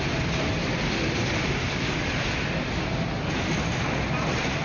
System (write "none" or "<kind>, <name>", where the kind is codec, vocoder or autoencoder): none